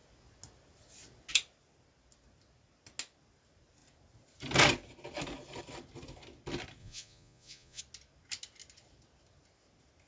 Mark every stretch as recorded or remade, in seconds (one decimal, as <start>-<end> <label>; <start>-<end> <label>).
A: 0.0-6.8 recorded; 6.8-7.8 remade; 7.8-10.1 recorded